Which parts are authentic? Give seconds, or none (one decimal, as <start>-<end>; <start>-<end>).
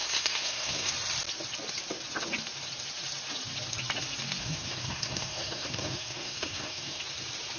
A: 0.9-4.4; 7.0-7.6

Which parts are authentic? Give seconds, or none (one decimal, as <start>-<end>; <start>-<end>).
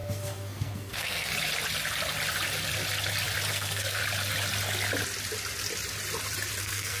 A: 1.3-3.5; 4.0-6.6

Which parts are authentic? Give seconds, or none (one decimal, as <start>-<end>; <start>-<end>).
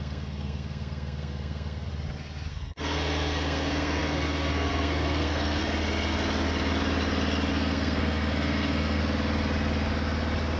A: 1.9-2.5; 5.6-7.5; 9.0-10.6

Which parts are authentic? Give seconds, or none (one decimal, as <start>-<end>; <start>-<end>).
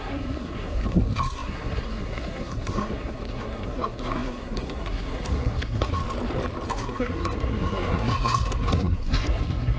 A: 6.0-6.7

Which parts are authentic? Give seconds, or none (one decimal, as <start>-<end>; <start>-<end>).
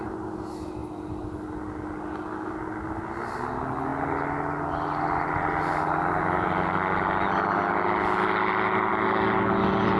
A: 0.0-10.0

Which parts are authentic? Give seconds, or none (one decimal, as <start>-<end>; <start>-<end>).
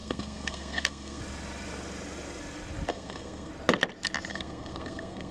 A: 1.2-2.9; 3.5-4.3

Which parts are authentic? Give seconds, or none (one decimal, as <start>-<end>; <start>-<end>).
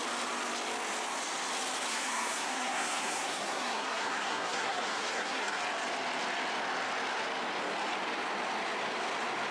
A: 0.0-1.9; 5.6-9.5